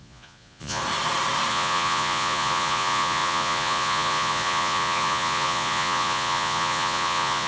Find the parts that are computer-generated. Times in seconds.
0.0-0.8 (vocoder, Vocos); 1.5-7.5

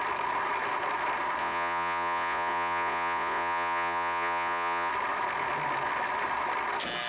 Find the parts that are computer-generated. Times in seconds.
1.4-4.9 (vocoder, Vocos)

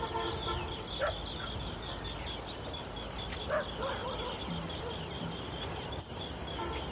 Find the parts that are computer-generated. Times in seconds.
none

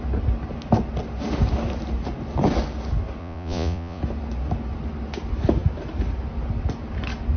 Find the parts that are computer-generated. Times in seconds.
3.2-4.0 (vocoder, Vocos)

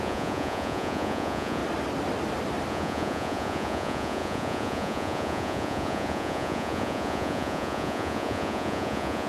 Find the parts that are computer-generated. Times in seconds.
0.0-1.6 (vocoder, Vocos); 2.7-9.3

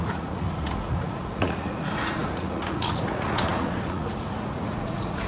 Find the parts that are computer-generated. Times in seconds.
0.0-5.3 (vocoder, Vocos)